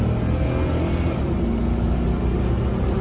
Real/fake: real